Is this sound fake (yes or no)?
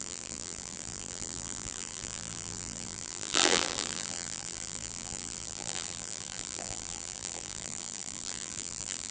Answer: yes